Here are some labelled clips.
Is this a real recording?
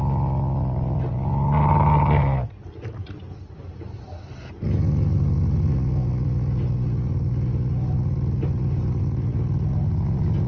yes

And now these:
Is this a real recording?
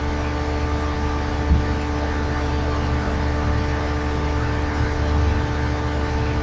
yes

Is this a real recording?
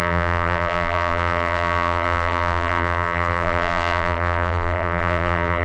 no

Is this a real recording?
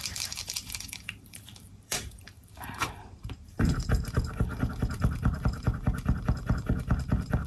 no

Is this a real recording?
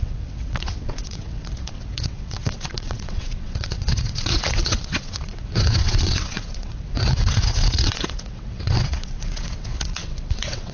no